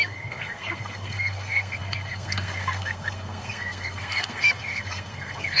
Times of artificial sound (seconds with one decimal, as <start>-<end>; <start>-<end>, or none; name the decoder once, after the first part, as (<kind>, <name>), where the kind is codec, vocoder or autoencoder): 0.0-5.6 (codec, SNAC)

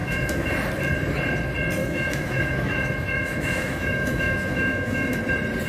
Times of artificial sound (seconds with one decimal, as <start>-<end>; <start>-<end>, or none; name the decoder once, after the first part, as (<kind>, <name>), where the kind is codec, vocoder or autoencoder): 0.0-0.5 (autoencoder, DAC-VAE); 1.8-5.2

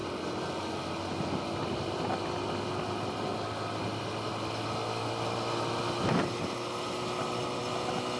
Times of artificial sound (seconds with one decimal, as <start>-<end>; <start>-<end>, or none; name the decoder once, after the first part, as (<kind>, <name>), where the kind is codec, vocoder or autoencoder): none

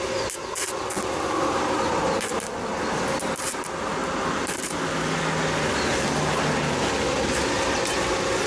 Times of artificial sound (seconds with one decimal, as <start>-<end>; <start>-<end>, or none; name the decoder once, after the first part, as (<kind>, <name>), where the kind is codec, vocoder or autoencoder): none

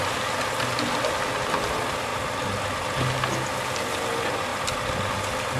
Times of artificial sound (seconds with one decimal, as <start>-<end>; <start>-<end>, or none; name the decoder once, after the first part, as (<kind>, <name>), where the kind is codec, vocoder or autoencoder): none

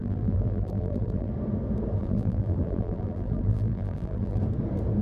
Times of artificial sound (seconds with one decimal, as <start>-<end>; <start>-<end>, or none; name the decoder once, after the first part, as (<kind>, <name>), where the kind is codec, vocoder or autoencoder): 0.0-1.3 (vocoder, BigVGAN v2); 2.0-4.4